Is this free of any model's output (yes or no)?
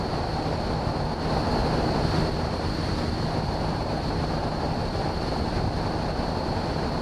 yes